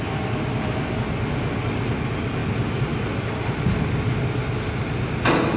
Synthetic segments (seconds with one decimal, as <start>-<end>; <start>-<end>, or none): none